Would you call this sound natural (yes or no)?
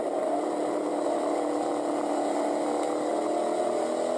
yes